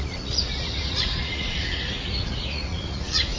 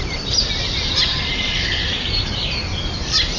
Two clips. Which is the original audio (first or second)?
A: second